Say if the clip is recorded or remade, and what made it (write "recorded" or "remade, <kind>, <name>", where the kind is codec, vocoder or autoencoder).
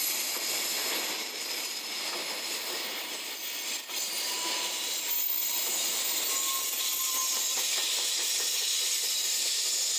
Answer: recorded